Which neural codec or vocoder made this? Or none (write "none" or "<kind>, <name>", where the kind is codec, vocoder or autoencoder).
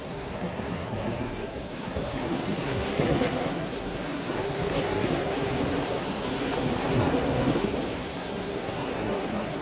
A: codec, SNAC